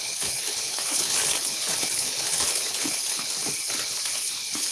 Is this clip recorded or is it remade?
remade